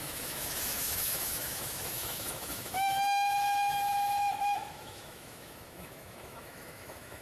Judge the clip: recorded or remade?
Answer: remade